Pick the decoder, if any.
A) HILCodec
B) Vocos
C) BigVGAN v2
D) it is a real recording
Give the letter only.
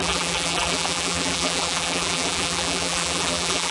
C